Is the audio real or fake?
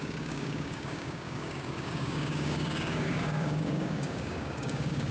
fake